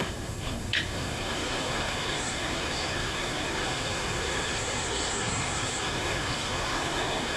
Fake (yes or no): yes